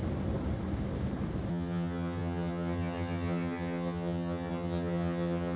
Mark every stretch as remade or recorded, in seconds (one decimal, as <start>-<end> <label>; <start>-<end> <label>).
0.0-1.5 recorded; 1.5-5.6 remade